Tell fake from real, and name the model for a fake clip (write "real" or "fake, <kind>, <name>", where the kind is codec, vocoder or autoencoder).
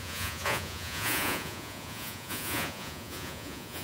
fake, vocoder, Vocos